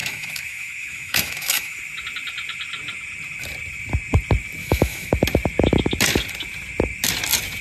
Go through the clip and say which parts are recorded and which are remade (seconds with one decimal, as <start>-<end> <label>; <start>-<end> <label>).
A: 0.0-1.8 remade; 1.8-4.6 recorded; 4.6-5.1 remade; 5.1-7.6 recorded